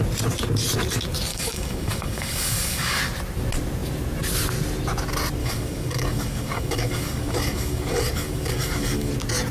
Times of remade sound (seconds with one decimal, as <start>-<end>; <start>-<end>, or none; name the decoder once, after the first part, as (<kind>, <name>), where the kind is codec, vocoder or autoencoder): 1.3-3.0 (codec, DAC); 5.4-9.1